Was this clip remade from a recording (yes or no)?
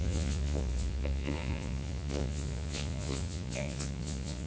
yes